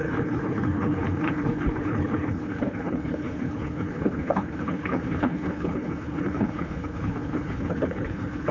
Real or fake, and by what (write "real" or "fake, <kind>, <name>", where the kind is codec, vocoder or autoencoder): fake, codec, HILCodec